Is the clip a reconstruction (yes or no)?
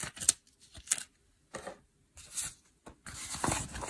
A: no